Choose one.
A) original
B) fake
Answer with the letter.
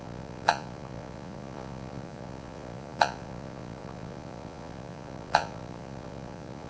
B